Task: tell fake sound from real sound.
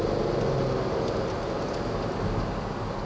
real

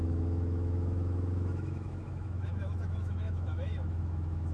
fake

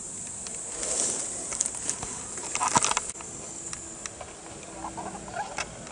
real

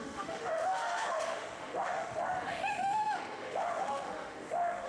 fake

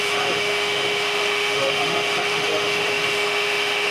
fake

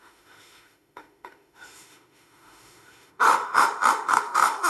fake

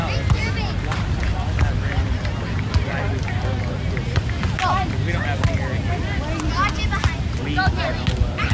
real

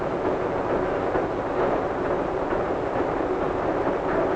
real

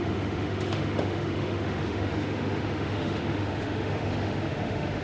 fake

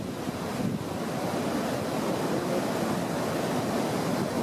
real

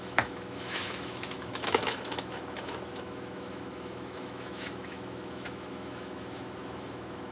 fake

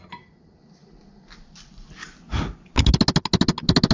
real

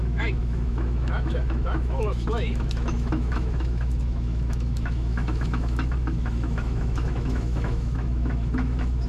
fake